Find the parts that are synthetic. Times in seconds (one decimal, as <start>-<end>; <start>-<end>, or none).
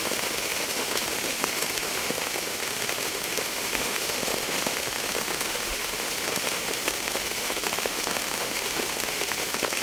0.0-9.8